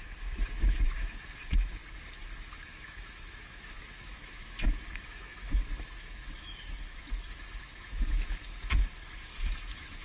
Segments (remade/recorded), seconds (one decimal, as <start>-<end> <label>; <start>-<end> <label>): 0.0-1.8 remade; 1.8-2.3 recorded; 2.3-10.0 remade

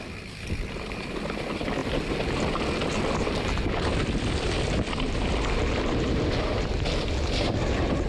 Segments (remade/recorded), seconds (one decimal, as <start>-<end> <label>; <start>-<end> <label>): 0.0-8.1 recorded